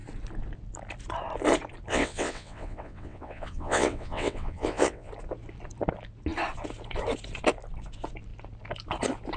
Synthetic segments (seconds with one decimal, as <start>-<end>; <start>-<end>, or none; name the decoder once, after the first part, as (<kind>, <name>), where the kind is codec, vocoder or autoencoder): 1.9-5.1 (vocoder, WaveNeXt)